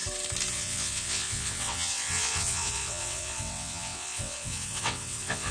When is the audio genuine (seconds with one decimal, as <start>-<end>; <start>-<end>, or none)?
0.0-0.5